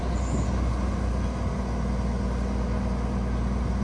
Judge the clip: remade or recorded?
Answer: recorded